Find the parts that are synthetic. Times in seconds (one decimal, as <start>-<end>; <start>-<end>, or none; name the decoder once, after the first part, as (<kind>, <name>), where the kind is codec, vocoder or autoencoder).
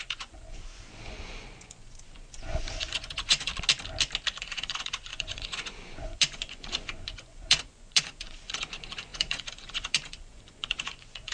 0.0-3.5 (vocoder, Vocos); 4.4-11.3